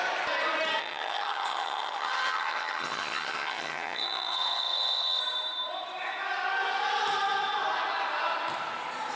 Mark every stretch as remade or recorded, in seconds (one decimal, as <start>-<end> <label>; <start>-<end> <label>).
0.0-0.8 recorded; 0.8-5.2 remade; 5.2-9.2 recorded